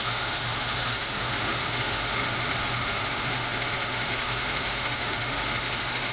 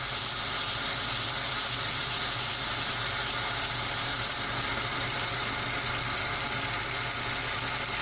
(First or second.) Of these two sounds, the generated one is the first